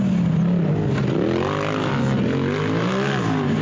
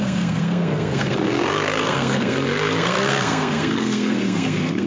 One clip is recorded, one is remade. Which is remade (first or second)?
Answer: second